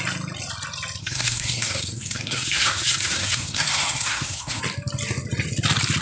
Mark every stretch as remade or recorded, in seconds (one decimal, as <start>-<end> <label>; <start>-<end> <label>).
0.0-1.0 recorded; 1.0-4.6 remade; 4.6-6.0 recorded